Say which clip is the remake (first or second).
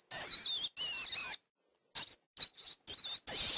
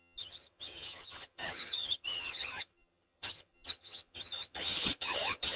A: second